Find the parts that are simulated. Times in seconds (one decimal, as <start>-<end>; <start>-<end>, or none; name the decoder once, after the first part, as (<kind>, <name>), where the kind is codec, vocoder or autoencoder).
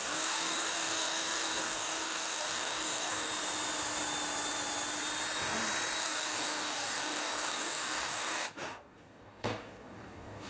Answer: 0.0-3.3 (codec, DAC); 6.0-10.5